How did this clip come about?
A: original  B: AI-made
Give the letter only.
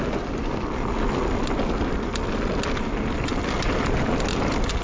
A